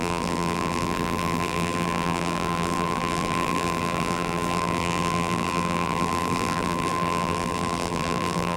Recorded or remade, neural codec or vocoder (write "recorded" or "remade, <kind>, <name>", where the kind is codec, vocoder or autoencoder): remade, vocoder, BigVGAN v2